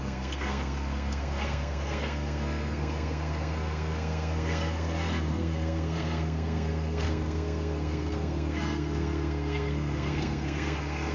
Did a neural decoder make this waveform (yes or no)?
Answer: yes